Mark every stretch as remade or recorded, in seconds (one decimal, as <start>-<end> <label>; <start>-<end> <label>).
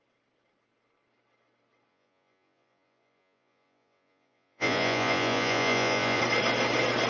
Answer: 0.0-1.9 recorded; 1.9-6.2 remade; 6.2-7.1 recorded